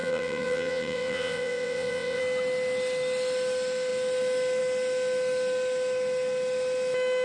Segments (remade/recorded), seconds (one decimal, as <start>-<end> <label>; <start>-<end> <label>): 0.0-2.2 remade; 2.2-7.2 recorded